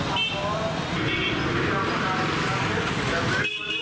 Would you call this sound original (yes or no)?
yes